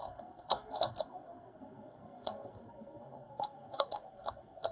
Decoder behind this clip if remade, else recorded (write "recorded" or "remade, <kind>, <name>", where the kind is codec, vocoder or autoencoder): remade, codec, SNAC